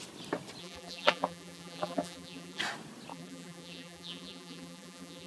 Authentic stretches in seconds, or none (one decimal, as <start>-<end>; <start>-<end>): 0.0-0.6; 2.6-3.1